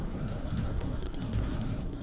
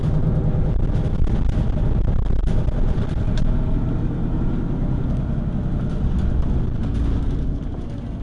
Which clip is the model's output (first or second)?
first